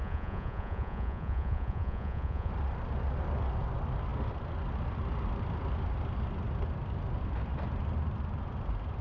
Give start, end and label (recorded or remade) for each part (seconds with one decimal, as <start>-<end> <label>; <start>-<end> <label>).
0.0-2.5 remade; 2.5-9.0 recorded